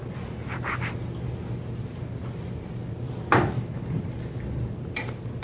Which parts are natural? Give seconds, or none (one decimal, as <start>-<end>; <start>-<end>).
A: 0.0-1.1; 2.8-5.4